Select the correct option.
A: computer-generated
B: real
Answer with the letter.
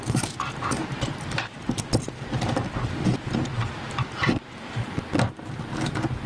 B